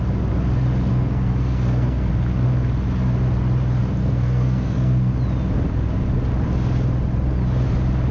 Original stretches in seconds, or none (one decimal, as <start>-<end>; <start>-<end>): 0.0-0.9; 2.1-4.0; 5.1-8.1